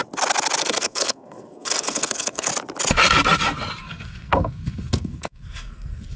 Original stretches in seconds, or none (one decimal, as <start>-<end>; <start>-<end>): 0.0-0.6; 2.5-3.8